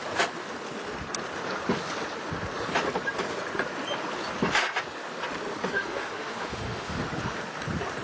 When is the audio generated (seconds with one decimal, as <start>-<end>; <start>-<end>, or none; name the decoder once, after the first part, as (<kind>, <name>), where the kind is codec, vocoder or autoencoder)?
5.6-7.0 (autoencoder, DAC-VAE)